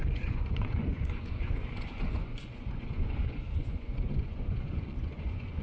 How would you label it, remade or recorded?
remade